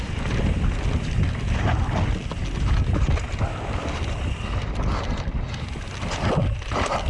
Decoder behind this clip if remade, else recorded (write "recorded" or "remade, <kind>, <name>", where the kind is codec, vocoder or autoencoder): recorded